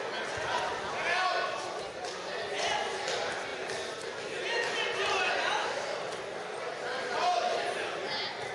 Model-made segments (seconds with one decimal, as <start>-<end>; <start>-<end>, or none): none